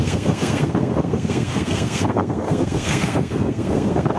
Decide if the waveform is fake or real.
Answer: fake